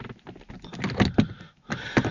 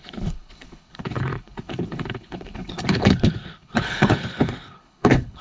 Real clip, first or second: first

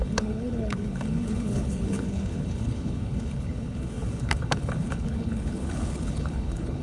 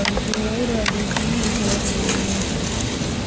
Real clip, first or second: second